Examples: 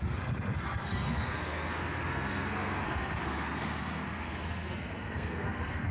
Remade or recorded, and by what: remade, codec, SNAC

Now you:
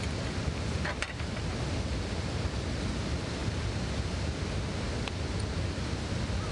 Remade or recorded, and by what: recorded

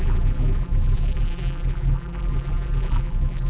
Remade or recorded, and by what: remade, vocoder, BigVGAN v2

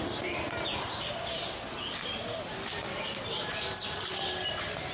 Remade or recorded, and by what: recorded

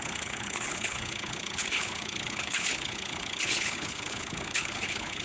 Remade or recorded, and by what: remade, codec, HILCodec